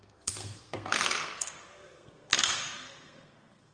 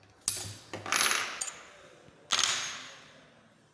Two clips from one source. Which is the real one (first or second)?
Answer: second